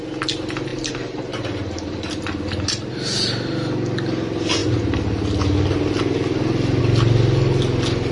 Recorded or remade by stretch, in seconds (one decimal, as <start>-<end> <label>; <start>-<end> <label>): 0.0-0.7 recorded; 0.7-2.1 remade; 2.1-8.1 recorded